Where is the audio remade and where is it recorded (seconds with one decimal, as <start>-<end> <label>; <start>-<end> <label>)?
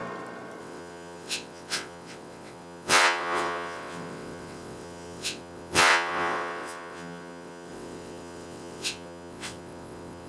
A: 0.0-0.6 recorded; 0.6-10.3 remade